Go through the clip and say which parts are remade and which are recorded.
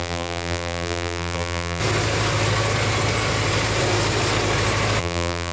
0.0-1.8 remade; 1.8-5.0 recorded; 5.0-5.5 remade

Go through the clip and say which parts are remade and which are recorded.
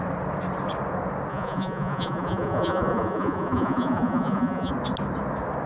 0.0-1.3 recorded; 1.3-4.7 remade; 4.7-5.7 recorded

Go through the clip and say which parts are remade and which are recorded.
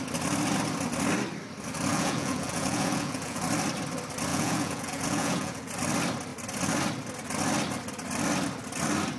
0.0-1.9 recorded; 1.9-3.4 remade; 3.4-4.3 recorded; 4.3-5.7 remade; 5.7-9.2 recorded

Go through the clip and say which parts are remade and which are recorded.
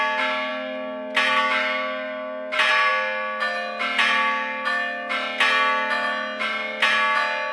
0.0-7.5 recorded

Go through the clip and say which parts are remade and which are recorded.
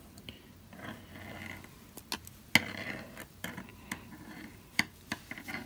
0.0-1.1 remade; 1.1-2.6 recorded; 2.6-5.7 remade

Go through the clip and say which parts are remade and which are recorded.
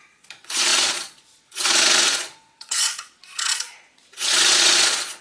0.0-5.2 remade